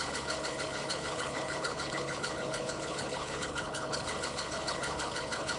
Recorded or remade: remade